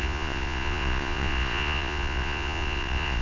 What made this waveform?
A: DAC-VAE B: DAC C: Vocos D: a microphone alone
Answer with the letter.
C